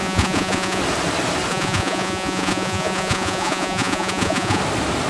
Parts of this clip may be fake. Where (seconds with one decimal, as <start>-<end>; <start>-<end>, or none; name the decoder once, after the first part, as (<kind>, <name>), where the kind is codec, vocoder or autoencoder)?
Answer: 0.0-0.8 (vocoder, Vocos); 1.5-4.6